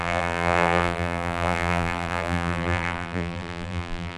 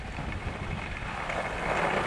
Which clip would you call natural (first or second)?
second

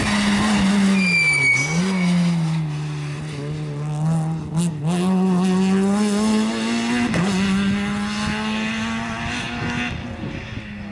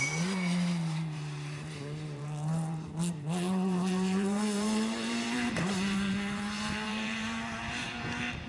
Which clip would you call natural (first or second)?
first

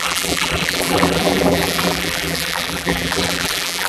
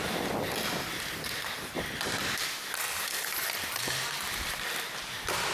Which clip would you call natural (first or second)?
second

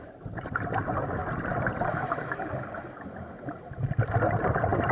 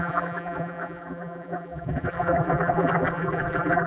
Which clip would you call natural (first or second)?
first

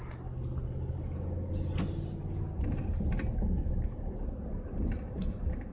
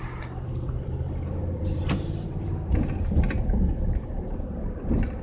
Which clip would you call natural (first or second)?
first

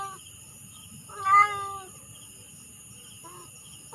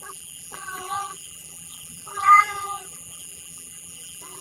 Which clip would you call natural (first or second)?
first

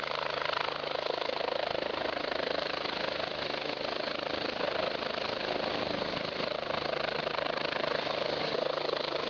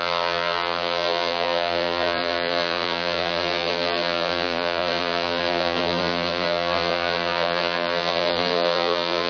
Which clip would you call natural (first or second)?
first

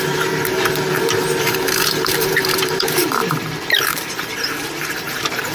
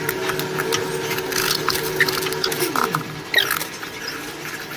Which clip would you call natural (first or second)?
second